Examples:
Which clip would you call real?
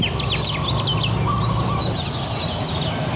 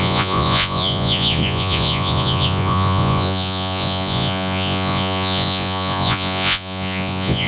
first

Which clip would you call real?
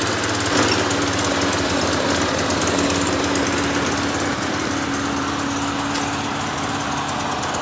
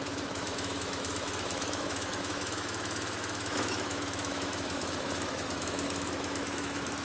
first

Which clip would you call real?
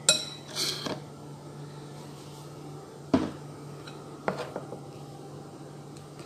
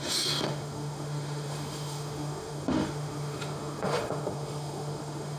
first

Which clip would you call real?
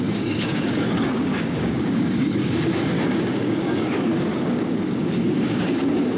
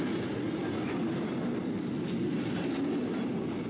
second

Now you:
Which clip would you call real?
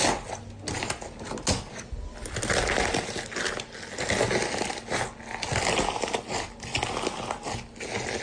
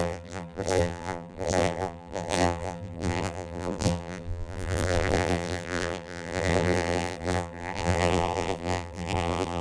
first